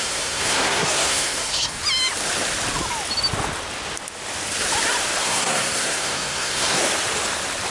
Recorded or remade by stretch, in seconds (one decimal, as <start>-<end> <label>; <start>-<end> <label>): 0.0-1.8 remade; 1.8-5.2 recorded; 5.2-6.8 remade; 6.8-7.7 recorded